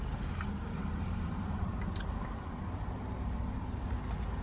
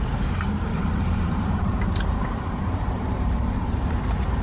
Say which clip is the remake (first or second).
second